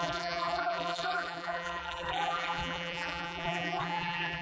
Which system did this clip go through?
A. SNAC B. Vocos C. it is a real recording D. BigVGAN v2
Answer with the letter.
D